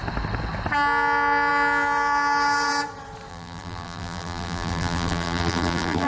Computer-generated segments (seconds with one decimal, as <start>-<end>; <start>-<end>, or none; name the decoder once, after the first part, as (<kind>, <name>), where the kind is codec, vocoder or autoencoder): 3.3-6.1 (vocoder, BigVGAN v2)